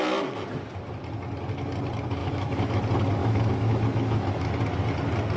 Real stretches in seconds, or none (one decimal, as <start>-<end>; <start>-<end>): 0.0-2.2; 2.8-3.2; 4.5-5.4